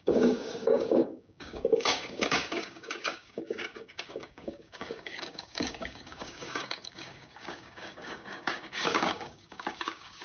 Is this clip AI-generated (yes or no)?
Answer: yes